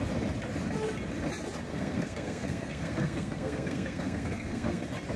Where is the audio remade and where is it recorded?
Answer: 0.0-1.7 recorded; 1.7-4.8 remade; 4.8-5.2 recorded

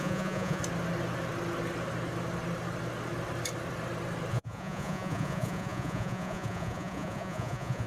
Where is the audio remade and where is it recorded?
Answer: 0.0-0.6 remade; 0.6-4.3 recorded; 4.3-7.9 remade

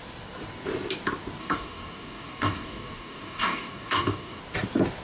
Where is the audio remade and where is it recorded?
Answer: 0.0-1.4 recorded; 1.4-4.4 remade; 4.4-5.0 recorded

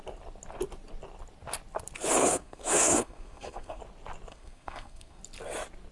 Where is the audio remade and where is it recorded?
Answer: 0.0-2.2 recorded; 2.2-3.8 remade; 3.8-4.3 recorded; 4.3-5.2 remade; 5.2-5.9 recorded